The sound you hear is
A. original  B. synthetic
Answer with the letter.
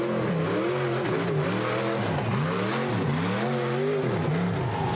A